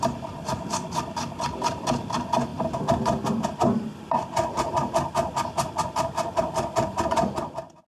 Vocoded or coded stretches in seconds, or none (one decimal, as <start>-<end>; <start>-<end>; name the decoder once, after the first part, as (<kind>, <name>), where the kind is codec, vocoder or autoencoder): none